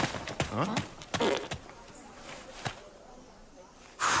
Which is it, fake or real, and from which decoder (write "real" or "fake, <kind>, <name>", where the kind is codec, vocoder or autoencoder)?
fake, vocoder, BigVGAN v2